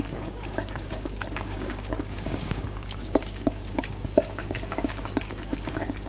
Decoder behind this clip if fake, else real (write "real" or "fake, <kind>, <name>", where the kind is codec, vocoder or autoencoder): fake, codec, DAC